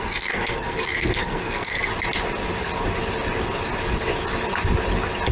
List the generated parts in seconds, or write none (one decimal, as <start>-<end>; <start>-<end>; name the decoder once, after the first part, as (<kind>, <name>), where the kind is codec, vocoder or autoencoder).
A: 0.0-1.9 (codec, SNAC)